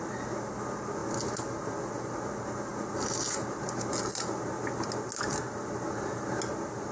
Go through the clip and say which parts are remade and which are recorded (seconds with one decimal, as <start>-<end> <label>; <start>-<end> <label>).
0.0-6.9 recorded